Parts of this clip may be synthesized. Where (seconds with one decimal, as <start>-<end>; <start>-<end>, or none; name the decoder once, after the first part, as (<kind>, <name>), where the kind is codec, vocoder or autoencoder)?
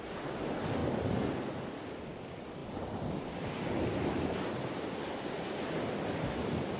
none